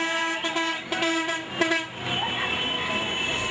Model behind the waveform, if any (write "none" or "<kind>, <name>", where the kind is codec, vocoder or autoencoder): none